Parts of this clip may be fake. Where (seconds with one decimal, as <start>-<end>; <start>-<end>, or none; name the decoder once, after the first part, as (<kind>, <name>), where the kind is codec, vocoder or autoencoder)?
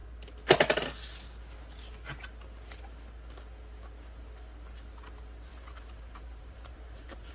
5.5-7.3 (vocoder, BigVGAN v2)